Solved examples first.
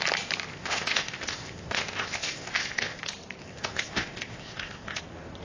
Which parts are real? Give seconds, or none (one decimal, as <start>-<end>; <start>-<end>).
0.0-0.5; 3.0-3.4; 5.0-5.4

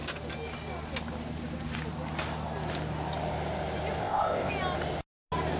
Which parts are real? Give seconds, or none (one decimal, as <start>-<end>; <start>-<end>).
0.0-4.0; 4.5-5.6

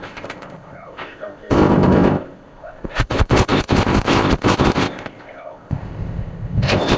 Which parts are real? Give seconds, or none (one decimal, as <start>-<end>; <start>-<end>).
none

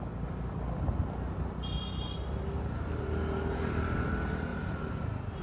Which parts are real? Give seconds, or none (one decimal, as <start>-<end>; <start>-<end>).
0.0-5.4

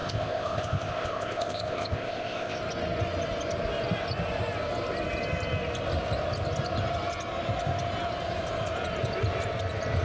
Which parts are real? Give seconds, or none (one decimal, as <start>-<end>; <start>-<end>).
2.6-10.0